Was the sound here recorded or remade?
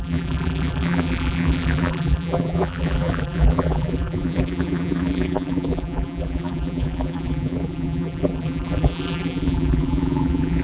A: remade